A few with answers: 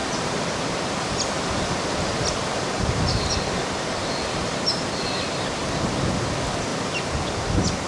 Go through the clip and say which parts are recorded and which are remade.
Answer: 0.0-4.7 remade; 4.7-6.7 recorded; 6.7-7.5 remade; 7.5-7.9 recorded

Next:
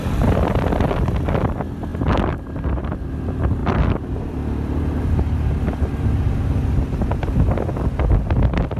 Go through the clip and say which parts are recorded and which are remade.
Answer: 0.0-1.9 recorded; 1.9-2.5 remade; 2.5-3.6 recorded; 3.6-4.8 remade; 4.8-8.8 recorded

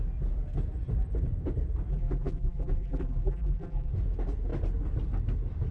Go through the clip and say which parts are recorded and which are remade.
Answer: 0.0-1.9 recorded; 1.9-3.9 remade; 3.9-5.7 recorded